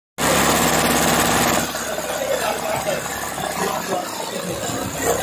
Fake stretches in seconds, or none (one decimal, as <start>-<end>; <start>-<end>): none